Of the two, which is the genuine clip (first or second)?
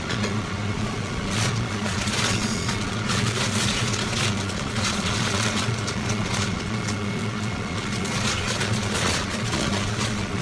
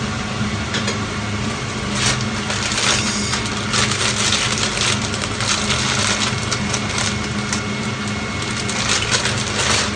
second